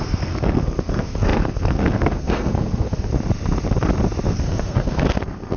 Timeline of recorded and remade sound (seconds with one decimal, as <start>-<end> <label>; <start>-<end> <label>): 0.0-3.1 remade; 3.1-4.3 recorded; 4.3-5.6 remade